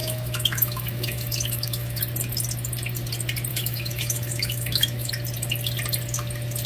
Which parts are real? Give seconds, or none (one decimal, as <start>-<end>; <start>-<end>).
2.0-3.5; 5.1-6.7